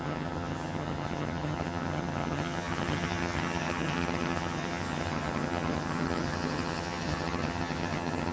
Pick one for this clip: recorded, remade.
remade